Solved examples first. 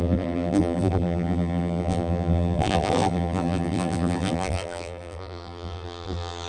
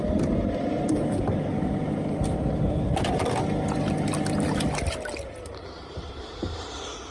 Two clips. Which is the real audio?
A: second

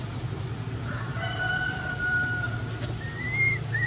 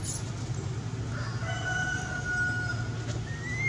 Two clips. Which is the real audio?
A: second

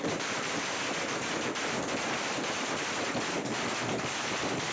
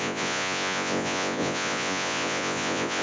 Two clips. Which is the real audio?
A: first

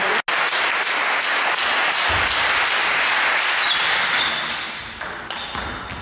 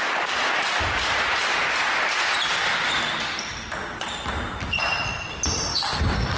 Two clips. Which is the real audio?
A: first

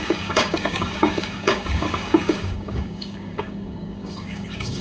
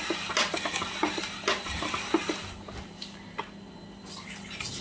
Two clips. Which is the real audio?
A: second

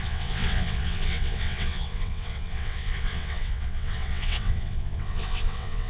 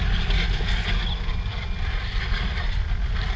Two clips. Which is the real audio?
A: second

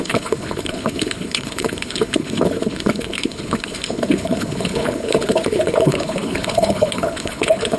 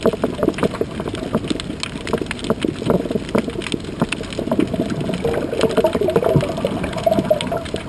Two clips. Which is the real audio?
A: second